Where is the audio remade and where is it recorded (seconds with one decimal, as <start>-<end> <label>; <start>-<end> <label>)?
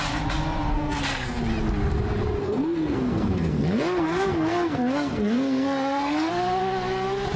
0.0-0.7 recorded; 0.7-1.4 remade; 1.4-2.4 recorded; 2.4-6.3 remade; 6.3-7.4 recorded